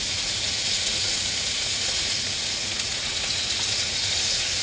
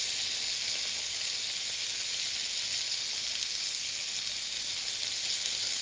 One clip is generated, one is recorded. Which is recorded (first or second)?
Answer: second